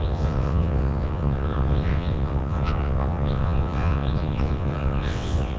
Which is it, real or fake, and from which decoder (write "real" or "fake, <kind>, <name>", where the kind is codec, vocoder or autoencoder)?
fake, vocoder, WaveNeXt